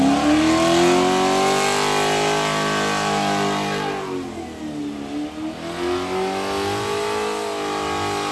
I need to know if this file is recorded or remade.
recorded